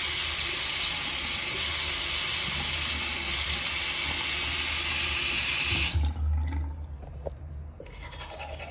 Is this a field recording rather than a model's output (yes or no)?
yes